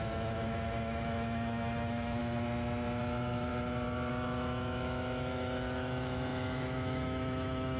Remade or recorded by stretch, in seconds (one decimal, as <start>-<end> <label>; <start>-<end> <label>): 0.0-2.2 remade; 2.2-3.0 recorded; 3.0-3.5 remade; 3.5-4.1 recorded; 4.1-7.8 remade